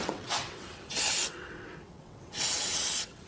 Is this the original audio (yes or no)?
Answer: no